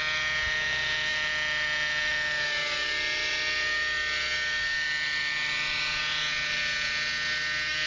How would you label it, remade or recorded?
recorded